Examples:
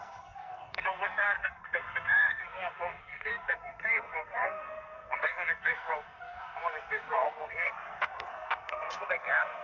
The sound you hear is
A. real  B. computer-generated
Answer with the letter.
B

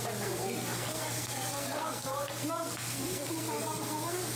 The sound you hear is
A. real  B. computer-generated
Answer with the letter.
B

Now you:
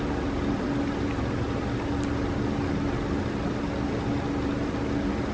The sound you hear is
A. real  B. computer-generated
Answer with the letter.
A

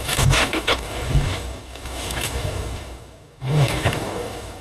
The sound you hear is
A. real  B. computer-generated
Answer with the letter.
B